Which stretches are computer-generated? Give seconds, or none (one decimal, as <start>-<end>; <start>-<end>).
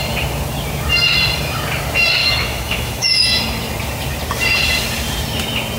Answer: 2.2-3.4